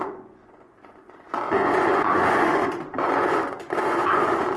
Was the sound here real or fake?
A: fake